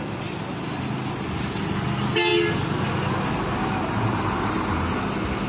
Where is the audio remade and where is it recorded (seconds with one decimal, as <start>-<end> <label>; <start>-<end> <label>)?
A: 0.0-5.5 recorded